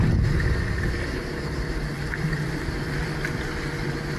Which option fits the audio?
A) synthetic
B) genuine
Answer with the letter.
B